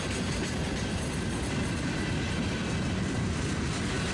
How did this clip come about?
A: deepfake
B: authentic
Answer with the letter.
B